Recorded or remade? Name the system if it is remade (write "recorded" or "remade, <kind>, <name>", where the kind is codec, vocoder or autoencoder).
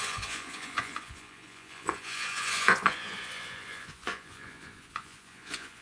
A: remade, vocoder, Vocos